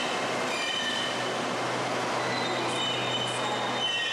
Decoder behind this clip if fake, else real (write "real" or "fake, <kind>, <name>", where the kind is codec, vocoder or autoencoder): real